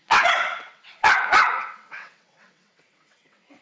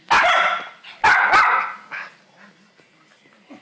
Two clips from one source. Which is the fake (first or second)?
first